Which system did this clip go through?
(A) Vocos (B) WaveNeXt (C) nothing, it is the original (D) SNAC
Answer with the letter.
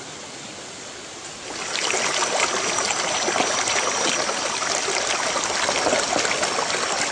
C